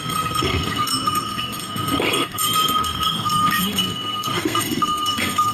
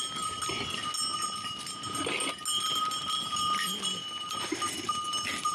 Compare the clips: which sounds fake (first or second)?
first